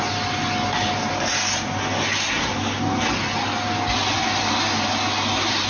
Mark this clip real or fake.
real